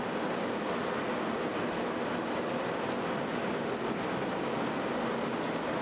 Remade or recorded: recorded